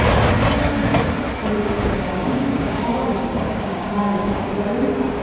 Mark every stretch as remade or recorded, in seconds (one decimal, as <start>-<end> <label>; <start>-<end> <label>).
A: 0.0-1.4 recorded; 1.4-4.5 remade; 4.5-5.2 recorded